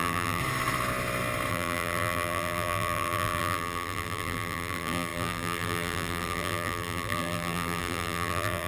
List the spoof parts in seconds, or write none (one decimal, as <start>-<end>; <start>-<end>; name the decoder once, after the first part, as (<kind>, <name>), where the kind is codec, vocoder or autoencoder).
0.0-0.4 (vocoder, BigVGAN v2); 1.5-8.7